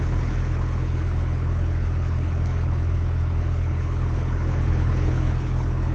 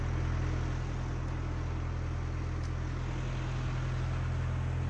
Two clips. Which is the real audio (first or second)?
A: second